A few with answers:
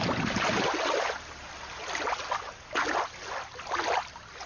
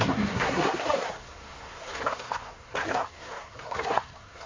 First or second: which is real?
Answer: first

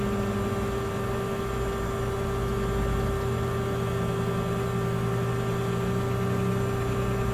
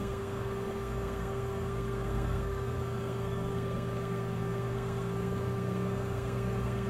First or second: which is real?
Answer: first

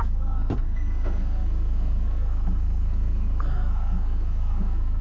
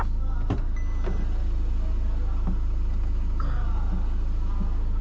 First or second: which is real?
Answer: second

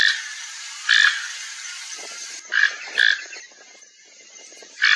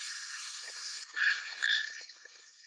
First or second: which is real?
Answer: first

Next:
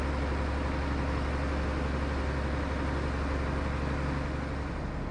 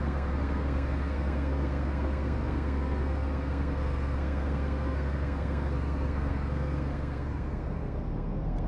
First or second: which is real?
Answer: first